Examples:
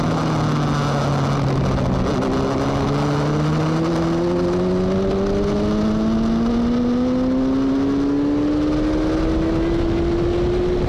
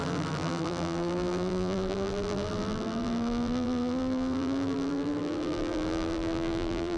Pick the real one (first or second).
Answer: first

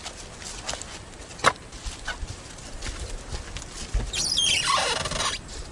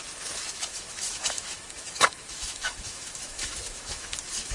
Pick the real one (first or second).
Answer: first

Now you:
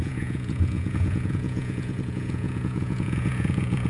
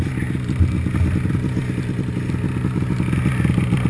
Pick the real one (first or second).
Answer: second